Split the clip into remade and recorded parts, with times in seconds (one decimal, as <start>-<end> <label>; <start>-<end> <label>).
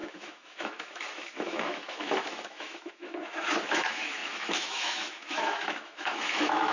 0.0-6.7 remade